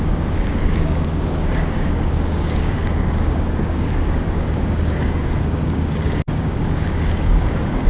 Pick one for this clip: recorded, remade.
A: remade